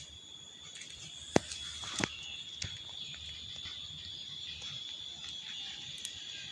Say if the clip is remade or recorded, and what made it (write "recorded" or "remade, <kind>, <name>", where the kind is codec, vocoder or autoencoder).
recorded